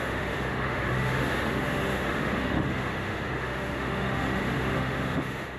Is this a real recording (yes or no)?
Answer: no